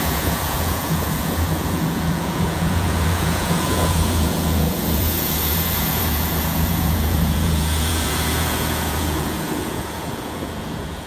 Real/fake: fake